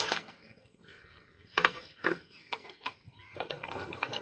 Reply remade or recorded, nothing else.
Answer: remade